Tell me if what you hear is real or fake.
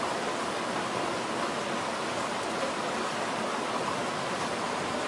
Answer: real